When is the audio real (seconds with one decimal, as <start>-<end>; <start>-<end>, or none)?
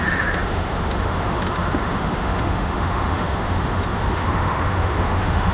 none